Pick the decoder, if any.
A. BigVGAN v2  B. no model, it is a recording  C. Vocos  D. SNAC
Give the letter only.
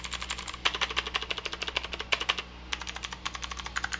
B